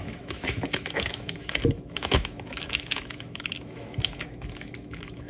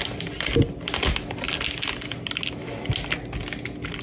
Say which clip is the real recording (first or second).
second